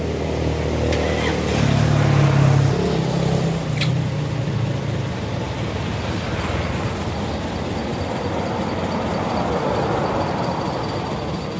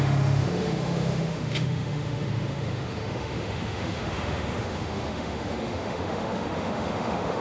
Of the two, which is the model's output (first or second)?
second